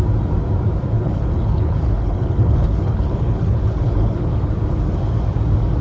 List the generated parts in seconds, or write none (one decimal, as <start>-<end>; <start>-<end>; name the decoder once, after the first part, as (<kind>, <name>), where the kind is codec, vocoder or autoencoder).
1.0-4.5 (codec, HILCodec)